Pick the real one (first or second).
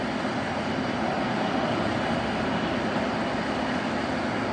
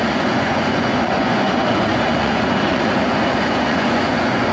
first